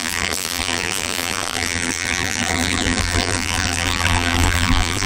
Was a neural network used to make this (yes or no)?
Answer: yes